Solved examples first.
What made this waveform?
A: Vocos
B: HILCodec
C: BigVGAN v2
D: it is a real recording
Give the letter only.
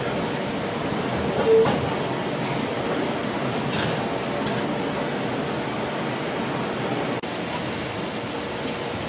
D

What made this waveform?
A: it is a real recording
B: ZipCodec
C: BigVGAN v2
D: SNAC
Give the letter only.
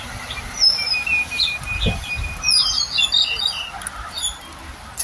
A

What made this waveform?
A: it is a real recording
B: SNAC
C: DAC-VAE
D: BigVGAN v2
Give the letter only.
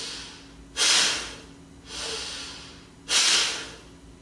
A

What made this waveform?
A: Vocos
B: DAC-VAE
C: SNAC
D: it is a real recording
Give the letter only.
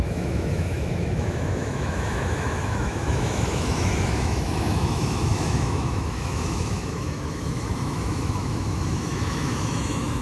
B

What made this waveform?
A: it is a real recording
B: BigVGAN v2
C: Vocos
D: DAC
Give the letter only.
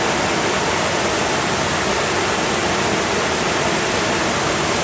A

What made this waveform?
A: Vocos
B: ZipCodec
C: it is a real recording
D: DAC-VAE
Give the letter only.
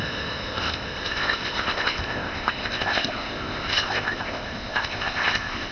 B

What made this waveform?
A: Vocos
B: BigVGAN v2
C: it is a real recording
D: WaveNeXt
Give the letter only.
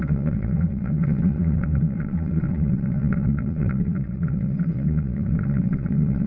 D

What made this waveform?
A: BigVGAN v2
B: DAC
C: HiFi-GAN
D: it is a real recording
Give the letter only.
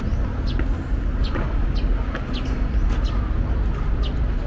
D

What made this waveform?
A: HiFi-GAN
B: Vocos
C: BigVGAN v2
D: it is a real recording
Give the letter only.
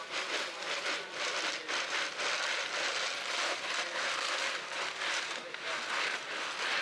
D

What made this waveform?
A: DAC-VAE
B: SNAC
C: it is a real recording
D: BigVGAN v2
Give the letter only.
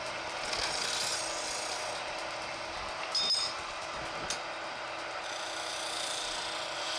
C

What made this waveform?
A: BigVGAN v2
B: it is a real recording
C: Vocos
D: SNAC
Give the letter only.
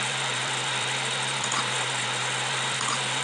A